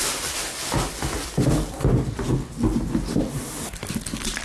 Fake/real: real